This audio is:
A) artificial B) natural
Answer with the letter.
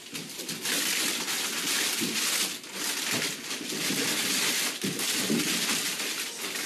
B